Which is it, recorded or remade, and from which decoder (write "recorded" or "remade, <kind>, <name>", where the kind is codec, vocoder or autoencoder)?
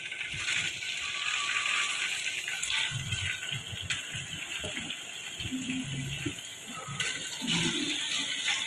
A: recorded